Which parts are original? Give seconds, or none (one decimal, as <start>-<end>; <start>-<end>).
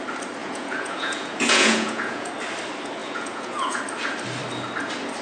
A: 0.0-0.4; 2.3-3.0; 3.8-5.2